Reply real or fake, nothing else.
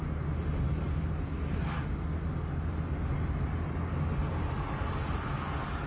real